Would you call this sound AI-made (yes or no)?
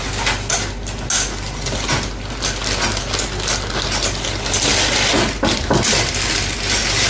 no